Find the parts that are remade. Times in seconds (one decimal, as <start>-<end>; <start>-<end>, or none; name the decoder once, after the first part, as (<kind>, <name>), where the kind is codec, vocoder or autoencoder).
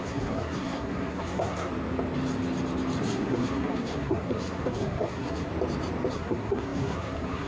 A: 0.0-1.7 (codec, SNAC); 3.0-5.5; 6.1-7.5